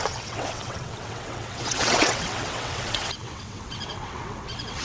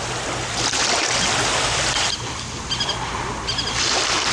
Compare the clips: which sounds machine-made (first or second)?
first